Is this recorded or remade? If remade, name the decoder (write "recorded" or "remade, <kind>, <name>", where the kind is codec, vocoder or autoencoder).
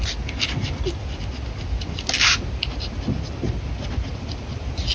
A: recorded